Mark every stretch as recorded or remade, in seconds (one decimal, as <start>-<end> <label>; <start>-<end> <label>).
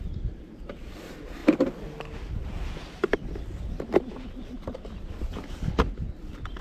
0.0-6.6 recorded